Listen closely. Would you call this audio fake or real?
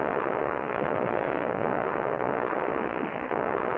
fake